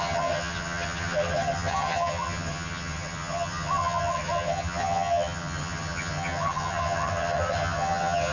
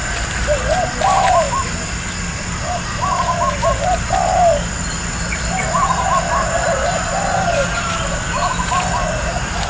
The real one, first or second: second